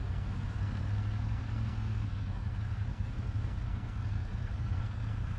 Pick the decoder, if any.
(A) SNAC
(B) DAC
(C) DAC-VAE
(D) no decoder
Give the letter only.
A